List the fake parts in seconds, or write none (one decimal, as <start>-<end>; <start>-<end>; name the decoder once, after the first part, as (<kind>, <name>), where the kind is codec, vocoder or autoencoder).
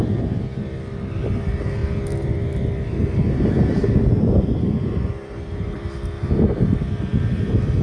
none